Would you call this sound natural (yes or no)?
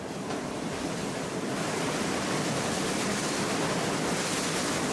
yes